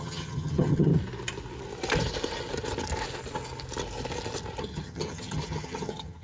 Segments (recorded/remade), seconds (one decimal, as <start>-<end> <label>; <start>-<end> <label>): 0.0-0.9 remade; 0.9-4.6 recorded; 4.6-6.2 remade